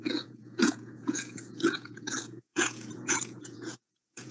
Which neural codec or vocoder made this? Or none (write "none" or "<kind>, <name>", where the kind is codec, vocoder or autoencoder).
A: vocoder, Vocos